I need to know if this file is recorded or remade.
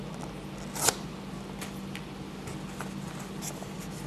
recorded